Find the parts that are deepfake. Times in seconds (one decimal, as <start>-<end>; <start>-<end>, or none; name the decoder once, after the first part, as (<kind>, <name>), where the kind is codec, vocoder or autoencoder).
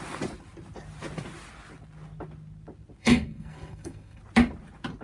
3.0-4.2 (codec, SNAC)